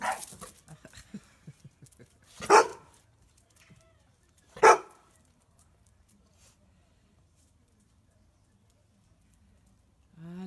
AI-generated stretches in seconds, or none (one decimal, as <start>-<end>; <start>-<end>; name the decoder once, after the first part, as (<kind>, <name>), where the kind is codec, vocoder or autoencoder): 2.7-7.7 (vocoder, BigVGAN v2)

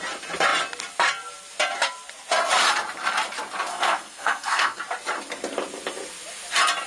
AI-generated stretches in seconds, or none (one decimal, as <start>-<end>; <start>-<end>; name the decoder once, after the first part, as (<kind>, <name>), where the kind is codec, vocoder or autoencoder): 3.7-4.8 (codec, SNAC)